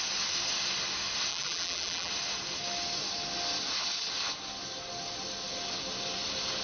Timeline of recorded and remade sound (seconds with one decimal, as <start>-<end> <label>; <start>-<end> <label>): 0.0-1.3 recorded; 1.3-2.1 remade; 2.1-6.6 recorded